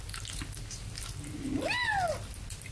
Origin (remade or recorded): recorded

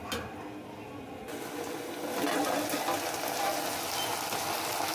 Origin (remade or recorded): recorded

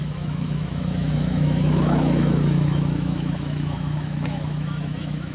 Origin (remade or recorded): remade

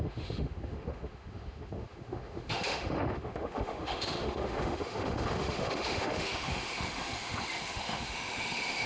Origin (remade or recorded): remade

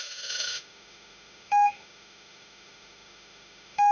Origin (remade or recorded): remade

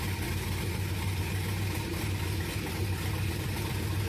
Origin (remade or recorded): recorded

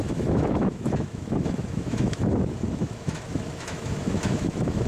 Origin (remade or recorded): remade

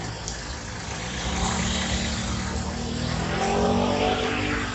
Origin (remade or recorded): recorded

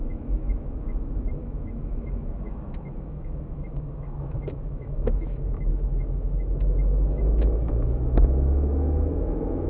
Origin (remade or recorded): remade